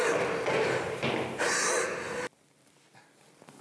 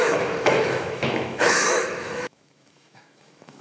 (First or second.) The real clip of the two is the first